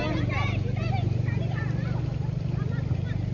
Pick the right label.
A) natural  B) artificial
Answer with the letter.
A